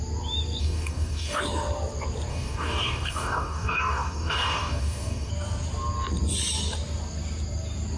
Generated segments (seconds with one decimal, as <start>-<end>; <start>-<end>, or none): 0.6-1.4; 2.3-5.3